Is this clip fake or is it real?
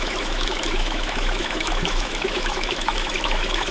fake